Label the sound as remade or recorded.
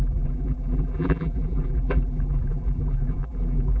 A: remade